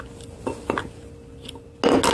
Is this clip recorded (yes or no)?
yes